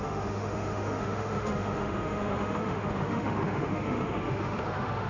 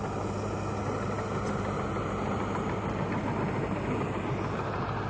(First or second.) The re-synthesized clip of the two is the first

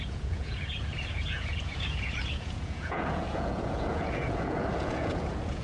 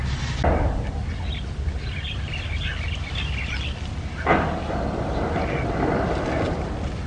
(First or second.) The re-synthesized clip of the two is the first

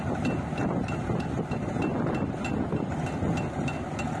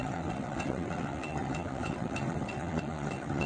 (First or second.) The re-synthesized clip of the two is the second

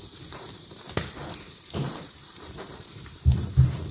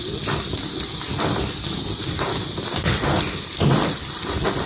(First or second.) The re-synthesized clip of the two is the first